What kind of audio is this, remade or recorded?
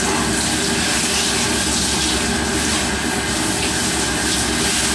recorded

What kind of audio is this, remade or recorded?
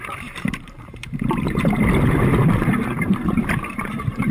remade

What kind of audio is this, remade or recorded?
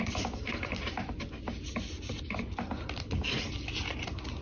recorded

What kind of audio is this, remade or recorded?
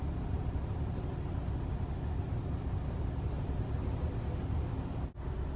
recorded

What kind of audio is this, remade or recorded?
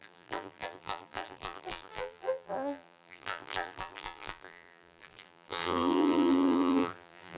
remade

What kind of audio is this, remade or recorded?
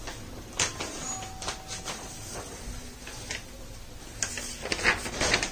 recorded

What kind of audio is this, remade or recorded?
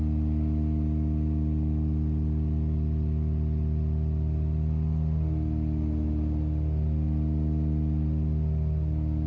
recorded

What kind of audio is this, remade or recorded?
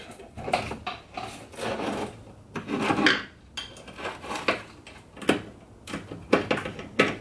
recorded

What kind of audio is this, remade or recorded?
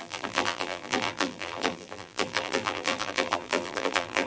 remade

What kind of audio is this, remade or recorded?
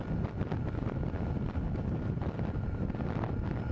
recorded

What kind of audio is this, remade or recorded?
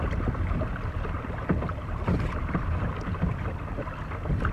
remade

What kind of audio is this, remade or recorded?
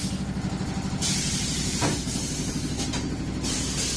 recorded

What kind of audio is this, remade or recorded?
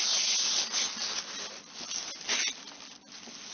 recorded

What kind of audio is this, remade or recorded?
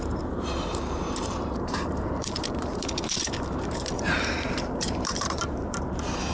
remade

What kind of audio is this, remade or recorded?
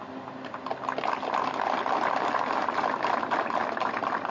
recorded